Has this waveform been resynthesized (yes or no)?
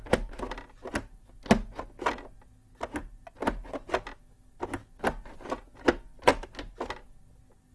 no